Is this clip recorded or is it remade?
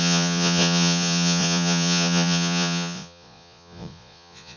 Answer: remade